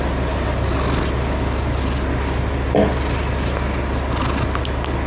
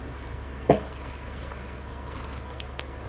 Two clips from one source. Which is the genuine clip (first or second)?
first